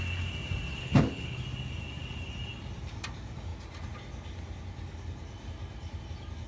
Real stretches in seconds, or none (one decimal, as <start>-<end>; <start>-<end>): 0.0-0.8; 1.4-6.5